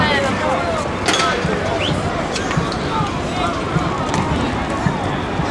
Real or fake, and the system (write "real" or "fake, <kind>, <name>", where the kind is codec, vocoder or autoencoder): real